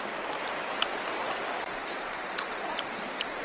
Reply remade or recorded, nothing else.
recorded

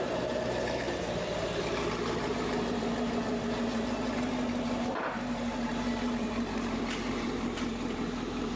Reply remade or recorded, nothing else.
remade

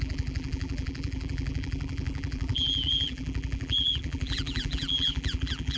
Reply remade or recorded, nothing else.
remade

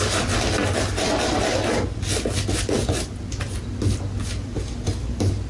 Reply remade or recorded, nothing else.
recorded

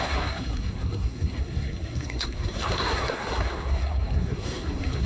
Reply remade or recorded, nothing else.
remade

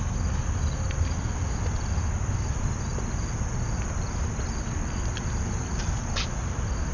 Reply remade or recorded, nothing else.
recorded